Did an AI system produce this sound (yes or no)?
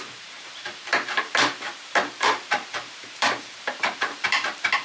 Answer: yes